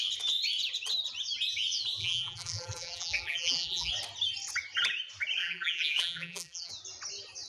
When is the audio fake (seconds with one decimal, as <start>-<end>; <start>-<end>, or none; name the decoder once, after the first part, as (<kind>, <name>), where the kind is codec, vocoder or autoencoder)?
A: 2.0-3.9 (vocoder, BigVGAN v2); 5.4-6.7